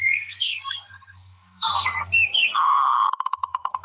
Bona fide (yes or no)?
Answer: no